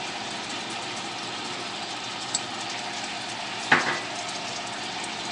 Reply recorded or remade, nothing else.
recorded